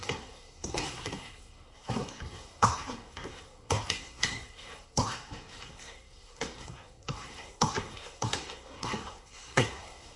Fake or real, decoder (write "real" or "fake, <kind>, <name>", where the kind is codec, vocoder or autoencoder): fake, codec, SNAC